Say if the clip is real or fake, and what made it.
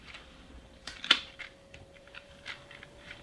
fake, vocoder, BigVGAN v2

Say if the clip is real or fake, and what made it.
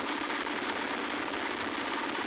real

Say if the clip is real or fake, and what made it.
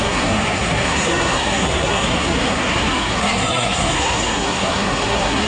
fake, codec, SNAC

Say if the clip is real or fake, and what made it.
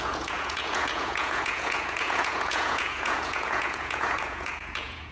fake, vocoder, Vocos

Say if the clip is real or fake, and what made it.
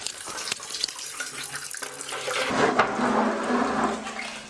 real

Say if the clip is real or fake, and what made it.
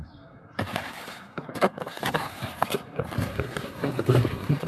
fake, codec, SNAC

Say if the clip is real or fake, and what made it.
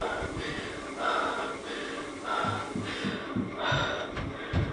real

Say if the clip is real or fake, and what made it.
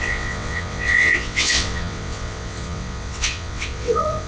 fake, vocoder, WaveNeXt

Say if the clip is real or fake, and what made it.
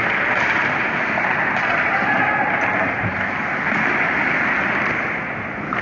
real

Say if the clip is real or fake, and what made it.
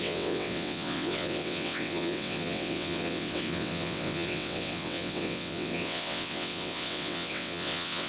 fake, vocoder, WaveNeXt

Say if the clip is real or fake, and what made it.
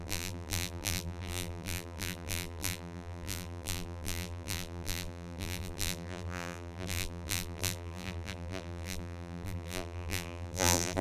fake, vocoder, BigVGAN v2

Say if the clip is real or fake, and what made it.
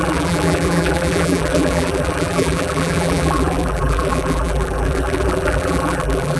fake, vocoder, BigVGAN v2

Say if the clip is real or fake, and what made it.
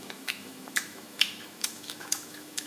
fake, autoencoder, DAC-VAE